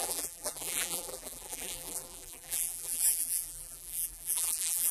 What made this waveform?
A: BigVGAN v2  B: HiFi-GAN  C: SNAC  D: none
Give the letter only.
A